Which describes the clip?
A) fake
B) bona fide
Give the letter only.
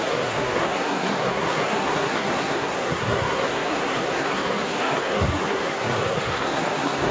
A